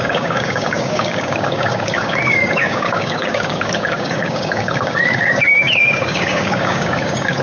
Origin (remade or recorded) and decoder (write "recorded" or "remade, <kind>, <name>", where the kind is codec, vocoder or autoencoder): remade, codec, DAC